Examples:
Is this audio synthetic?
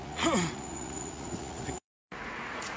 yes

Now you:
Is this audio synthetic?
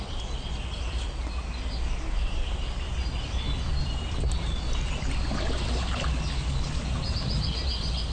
no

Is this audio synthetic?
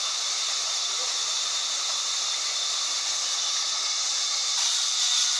no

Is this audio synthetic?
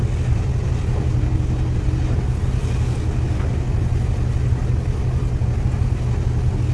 no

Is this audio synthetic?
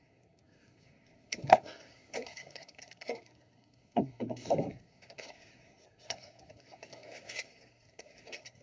yes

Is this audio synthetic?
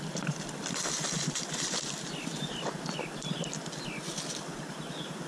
no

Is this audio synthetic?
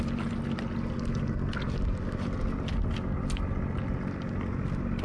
no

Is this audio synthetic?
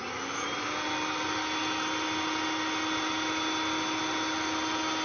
no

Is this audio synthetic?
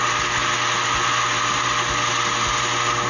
no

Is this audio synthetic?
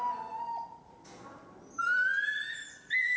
no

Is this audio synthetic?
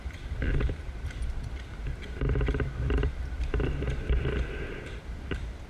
yes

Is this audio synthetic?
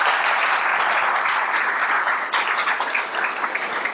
no